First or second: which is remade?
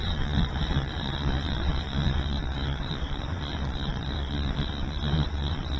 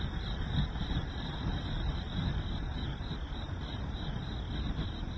first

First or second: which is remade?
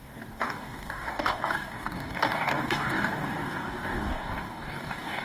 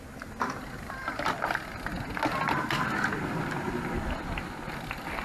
first